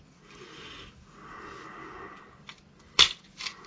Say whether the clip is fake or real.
real